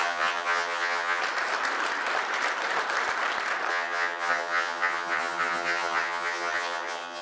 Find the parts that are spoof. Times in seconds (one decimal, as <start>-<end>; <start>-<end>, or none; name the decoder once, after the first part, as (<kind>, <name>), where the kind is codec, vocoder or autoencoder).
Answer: 0.0-1.2 (vocoder, HiFi-GAN); 3.7-7.2